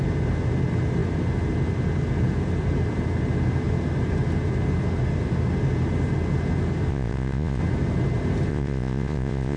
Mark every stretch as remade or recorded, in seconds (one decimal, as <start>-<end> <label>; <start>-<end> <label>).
0.0-6.9 recorded; 6.9-7.6 remade; 7.6-8.5 recorded; 8.5-9.6 remade